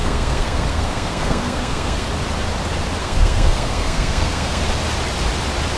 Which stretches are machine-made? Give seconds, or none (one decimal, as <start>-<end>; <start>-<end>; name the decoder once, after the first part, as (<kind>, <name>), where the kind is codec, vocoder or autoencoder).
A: 0.0-2.1 (codec, SNAC); 3.0-4.6